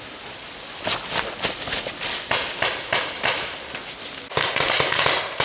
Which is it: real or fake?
real